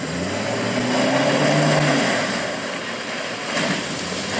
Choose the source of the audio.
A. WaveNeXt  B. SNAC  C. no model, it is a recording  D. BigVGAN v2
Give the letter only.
C